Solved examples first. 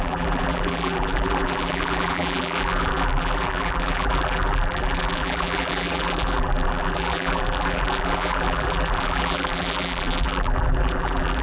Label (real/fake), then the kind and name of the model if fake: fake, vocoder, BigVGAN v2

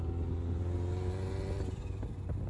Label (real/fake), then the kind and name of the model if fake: real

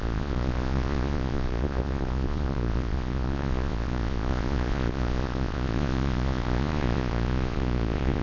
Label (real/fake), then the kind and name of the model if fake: fake, vocoder, Vocos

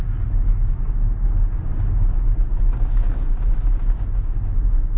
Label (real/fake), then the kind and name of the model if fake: real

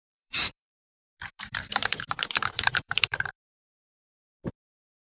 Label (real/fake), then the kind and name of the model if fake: fake, vocoder, BigVGAN v2